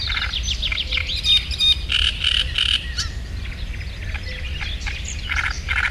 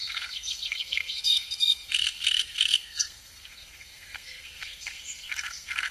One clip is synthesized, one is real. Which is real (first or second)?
first